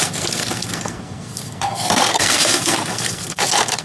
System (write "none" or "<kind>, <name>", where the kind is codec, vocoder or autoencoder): codec, SNAC